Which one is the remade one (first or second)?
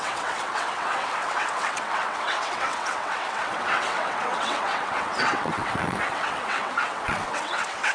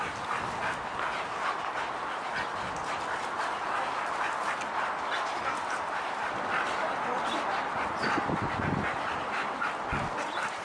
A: first